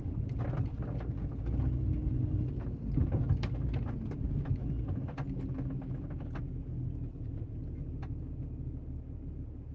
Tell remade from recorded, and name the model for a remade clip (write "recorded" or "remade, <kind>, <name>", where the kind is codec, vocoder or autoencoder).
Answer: recorded